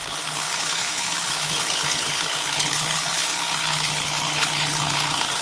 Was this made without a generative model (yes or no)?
no